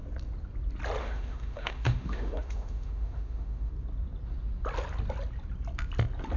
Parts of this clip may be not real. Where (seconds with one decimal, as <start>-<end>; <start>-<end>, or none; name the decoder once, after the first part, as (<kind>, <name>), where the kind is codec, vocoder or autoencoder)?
1.0-3.7 (autoencoder, DAC-VAE)